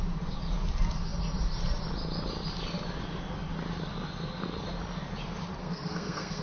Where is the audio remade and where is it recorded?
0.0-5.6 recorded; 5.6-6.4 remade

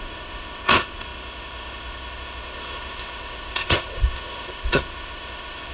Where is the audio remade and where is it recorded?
0.0-5.7 remade

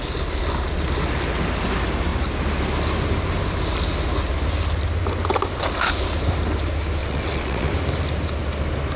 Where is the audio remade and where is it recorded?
0.0-7.0 recorded; 7.0-7.7 remade; 7.7-9.0 recorded

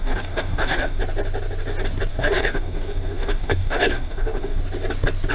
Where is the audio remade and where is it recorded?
0.0-1.0 remade; 1.0-2.1 recorded; 2.1-4.6 remade; 4.6-5.3 recorded

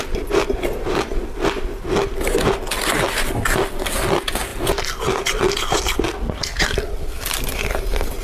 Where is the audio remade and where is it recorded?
0.0-8.2 recorded